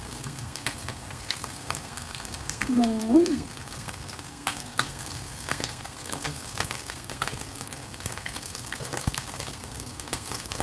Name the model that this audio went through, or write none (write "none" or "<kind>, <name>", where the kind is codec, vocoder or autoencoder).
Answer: codec, SNAC